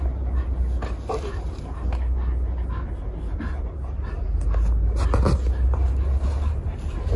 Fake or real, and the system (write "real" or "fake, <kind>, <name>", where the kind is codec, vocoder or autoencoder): real